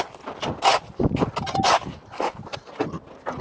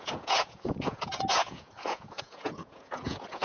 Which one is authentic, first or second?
first